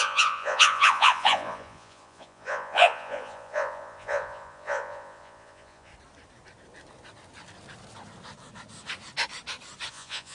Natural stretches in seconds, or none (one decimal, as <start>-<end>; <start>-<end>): 5.9-9.9

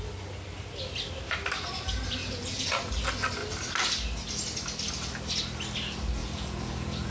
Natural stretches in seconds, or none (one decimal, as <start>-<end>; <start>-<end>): 0.0-2.2; 2.8-6.2

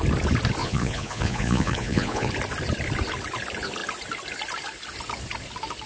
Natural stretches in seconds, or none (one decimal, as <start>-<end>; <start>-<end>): 0.0-0.6; 2.3-5.9

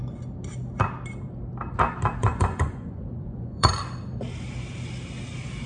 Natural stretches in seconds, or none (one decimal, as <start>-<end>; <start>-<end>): 0.0-2.2; 3.7-5.7

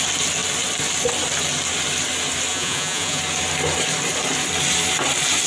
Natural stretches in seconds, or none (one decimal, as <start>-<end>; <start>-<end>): 0.0-2.5; 3.2-5.5

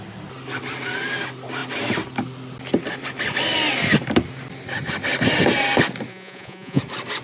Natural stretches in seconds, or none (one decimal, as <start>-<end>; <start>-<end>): 0.0-6.1; 6.8-7.2

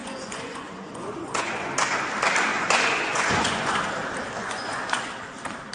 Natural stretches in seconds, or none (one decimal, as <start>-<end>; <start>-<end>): 1.7-2.5; 3.8-4.4; 5.1-5.7

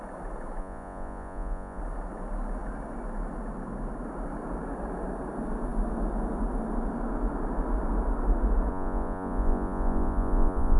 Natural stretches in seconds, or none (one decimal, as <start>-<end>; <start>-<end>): 0.0-0.6; 1.8-8.7